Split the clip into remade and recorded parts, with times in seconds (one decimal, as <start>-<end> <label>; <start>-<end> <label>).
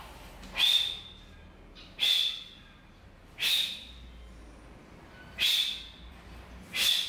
0.0-7.1 recorded